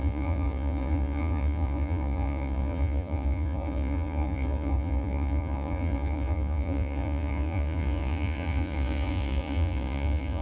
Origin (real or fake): fake